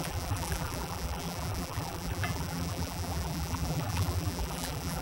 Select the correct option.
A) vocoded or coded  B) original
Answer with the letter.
A